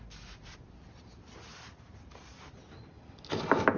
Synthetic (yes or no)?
no